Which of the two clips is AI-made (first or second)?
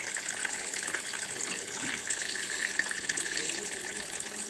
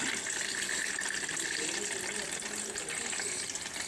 first